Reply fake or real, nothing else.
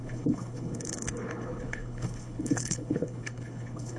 fake